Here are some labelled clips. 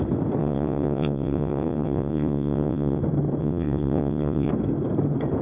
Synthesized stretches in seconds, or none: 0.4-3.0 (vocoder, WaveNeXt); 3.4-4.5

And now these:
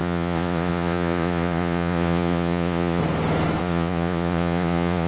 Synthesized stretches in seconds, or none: 0.0-3.0 (vocoder, Vocos); 3.6-5.1

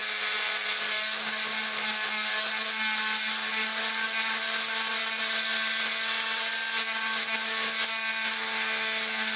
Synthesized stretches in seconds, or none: none

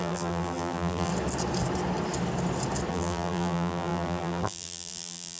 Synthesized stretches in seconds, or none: 0.0-1.1 (vocoder, BigVGAN v2); 2.9-5.4

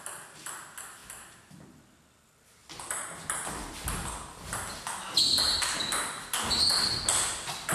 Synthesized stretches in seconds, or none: none